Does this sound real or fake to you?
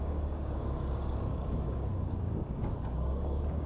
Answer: fake